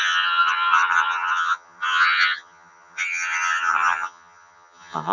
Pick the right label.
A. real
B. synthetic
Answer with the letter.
B